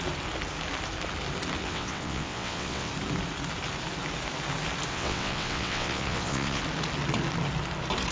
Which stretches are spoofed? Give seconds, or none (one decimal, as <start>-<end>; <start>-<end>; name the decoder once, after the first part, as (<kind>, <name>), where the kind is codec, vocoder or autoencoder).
1.6-2.9 (vocoder, WaveNeXt); 4.9-6.6